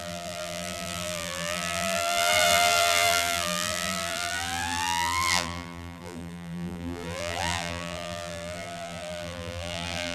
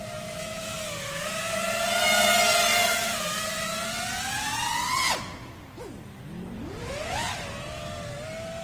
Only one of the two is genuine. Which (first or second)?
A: second